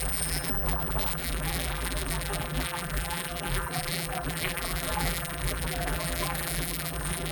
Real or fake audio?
fake